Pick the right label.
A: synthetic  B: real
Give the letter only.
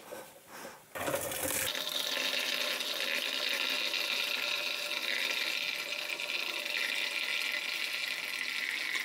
B